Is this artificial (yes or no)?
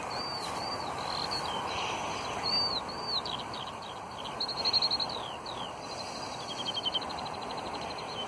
no